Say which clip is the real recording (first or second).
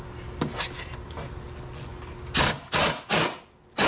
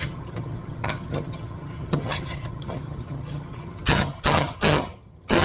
first